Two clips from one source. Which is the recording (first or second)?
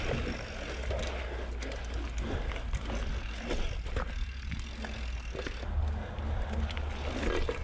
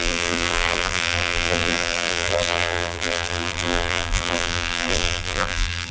first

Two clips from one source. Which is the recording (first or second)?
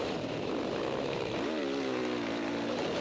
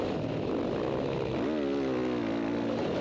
second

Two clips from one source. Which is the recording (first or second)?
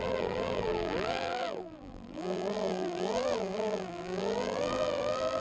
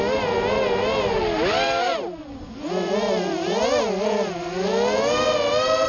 second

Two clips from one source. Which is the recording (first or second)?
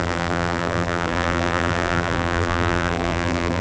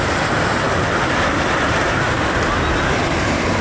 second